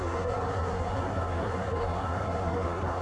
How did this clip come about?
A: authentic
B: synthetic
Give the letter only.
B